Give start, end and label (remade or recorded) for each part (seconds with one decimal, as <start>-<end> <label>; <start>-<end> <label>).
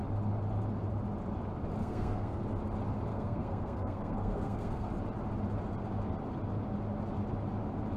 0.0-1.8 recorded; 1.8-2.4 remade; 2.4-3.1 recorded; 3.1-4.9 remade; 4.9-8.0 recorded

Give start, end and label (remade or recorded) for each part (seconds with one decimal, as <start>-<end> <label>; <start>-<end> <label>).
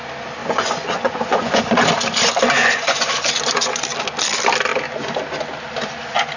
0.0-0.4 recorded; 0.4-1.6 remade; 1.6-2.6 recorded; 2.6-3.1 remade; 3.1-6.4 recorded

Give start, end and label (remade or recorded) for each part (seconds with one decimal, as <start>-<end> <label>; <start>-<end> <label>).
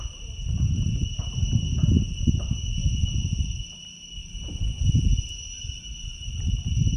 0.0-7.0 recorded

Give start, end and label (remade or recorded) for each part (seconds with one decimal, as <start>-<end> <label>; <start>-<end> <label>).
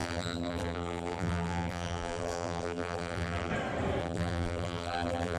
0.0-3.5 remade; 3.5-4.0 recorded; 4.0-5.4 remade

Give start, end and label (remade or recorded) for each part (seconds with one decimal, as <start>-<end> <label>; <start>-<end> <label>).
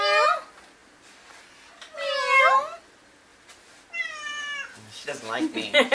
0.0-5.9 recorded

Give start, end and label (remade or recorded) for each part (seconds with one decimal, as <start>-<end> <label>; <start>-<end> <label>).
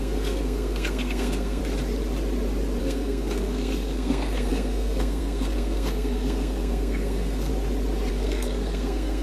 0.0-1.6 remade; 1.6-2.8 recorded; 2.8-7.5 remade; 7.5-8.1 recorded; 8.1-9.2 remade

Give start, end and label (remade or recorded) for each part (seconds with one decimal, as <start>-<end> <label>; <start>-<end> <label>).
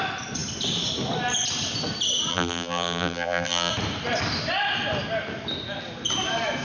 0.0-2.3 recorded; 2.3-3.7 remade; 3.7-6.6 recorded